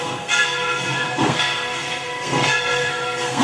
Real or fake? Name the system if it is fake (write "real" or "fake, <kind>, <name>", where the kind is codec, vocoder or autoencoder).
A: fake, codec, SNAC